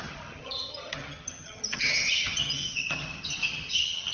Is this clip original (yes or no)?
no